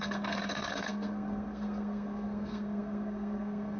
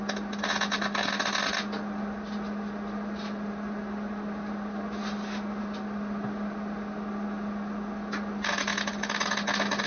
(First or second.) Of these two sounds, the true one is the second